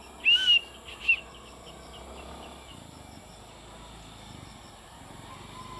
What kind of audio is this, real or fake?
real